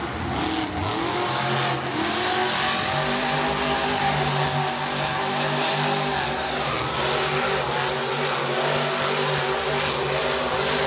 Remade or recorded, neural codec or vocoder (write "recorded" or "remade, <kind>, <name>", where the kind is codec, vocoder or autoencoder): recorded